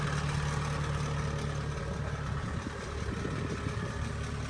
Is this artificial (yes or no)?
no